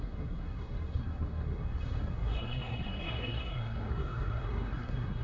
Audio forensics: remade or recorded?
remade